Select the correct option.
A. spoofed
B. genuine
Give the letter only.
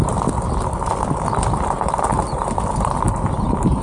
B